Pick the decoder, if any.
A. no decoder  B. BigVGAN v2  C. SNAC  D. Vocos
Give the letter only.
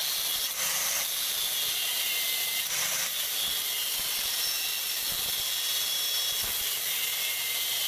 B